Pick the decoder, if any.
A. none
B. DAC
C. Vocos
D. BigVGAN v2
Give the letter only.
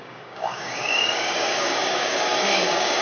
B